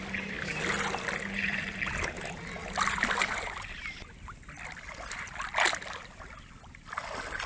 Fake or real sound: real